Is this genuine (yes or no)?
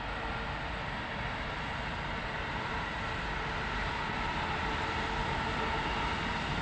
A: yes